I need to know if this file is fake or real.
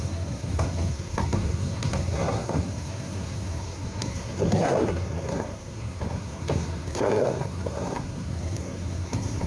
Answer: fake